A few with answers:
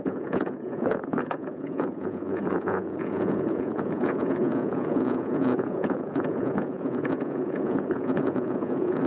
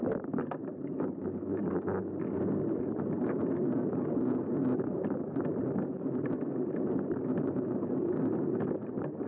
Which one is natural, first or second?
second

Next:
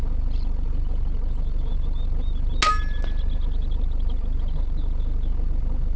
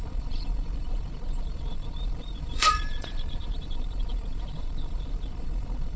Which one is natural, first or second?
first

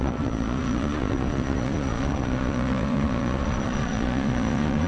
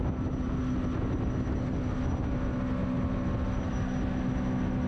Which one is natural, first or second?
second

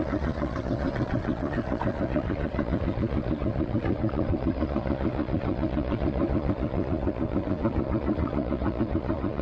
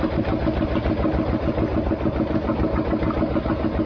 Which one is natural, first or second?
second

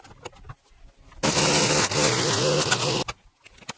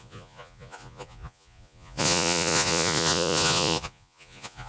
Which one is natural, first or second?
first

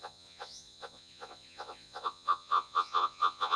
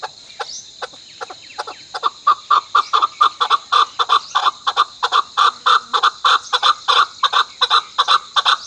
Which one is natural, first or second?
second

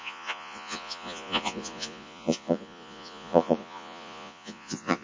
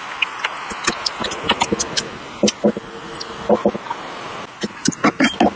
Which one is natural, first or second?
second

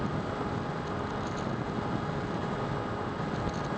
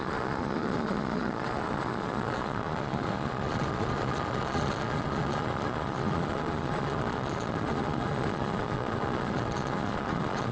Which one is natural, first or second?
first